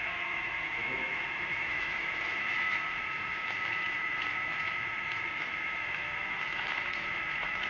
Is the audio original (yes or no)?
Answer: no